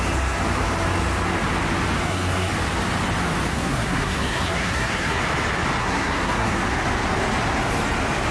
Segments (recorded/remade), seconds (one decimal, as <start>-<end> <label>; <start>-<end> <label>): 0.0-2.0 recorded; 2.0-2.5 remade; 2.5-3.5 recorded; 3.5-5.2 remade; 5.2-5.8 recorded; 5.8-6.6 remade; 6.6-8.3 recorded